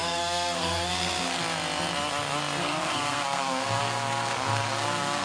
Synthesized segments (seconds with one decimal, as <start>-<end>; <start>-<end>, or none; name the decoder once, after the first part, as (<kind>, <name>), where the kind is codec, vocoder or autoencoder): 0.0-1.4 (codec, SNAC); 2.6-5.2